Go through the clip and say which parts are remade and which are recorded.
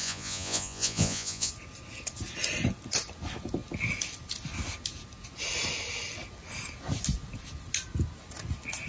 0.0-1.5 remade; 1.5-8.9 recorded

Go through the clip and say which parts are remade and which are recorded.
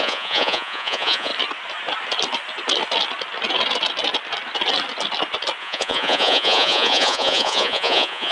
0.0-1.3 remade; 1.3-5.6 recorded; 5.6-8.3 remade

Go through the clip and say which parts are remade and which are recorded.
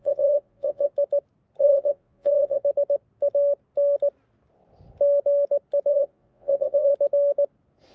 0.0-0.9 remade; 0.9-1.6 recorded; 1.6-2.6 remade; 2.6-5.9 recorded; 5.9-6.9 remade; 6.9-7.9 recorded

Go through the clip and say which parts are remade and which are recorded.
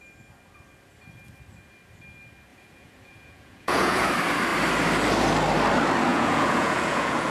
0.0-2.5 recorded; 2.5-4.1 remade; 4.1-6.1 recorded; 6.1-7.3 remade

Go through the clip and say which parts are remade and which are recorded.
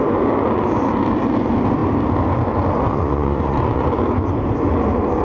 0.0-2.9 recorded; 2.9-3.9 remade; 3.9-5.2 recorded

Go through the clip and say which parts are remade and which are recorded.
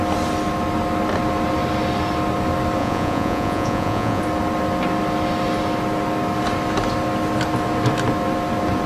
0.0-2.8 recorded; 2.8-4.2 remade; 4.2-8.9 recorded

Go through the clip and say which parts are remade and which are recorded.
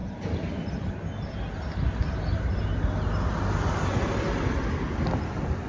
0.0-5.7 recorded